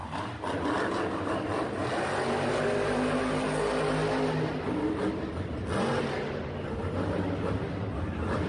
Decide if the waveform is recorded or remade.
recorded